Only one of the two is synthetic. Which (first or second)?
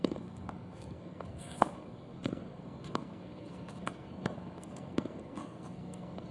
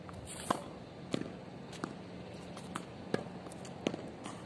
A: first